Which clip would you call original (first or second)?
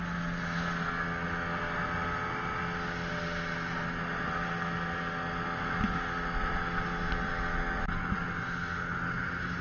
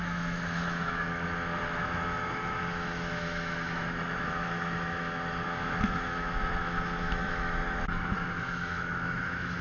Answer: first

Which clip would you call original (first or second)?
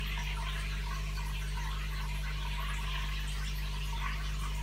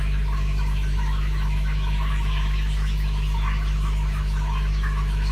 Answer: first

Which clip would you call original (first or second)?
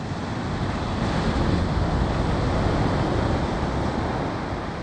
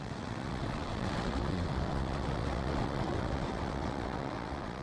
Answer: first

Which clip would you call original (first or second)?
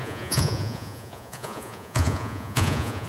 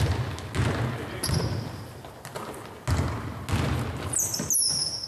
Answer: second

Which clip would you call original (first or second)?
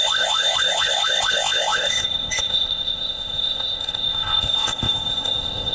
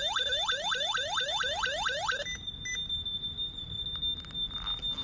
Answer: second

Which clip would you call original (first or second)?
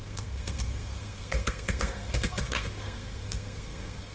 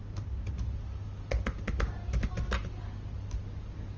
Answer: second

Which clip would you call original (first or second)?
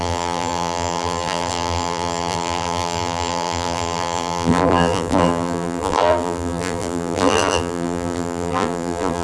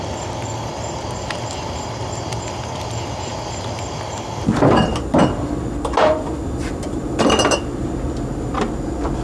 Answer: second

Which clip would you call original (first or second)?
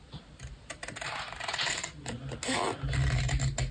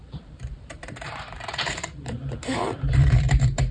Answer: first